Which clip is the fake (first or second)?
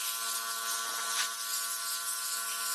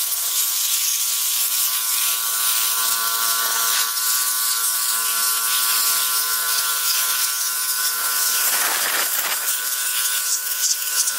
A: second